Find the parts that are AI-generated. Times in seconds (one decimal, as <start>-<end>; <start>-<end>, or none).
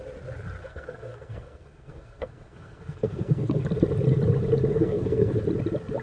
0.6-3.6; 4.7-5.4